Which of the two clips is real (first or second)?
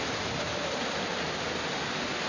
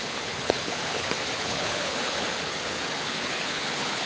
first